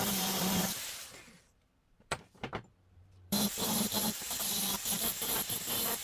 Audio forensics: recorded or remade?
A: remade